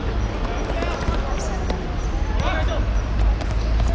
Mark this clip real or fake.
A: real